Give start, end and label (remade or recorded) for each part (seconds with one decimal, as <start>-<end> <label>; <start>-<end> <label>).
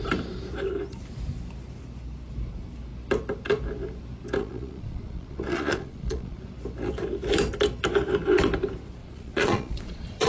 0.0-4.4 recorded; 4.4-6.4 remade; 6.4-9.0 recorded; 9.0-10.3 remade